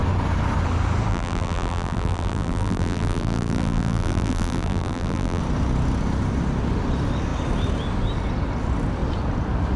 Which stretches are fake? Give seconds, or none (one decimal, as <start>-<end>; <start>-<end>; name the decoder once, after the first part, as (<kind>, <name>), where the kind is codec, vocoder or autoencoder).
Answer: 1.1-5.4 (vocoder, BigVGAN v2)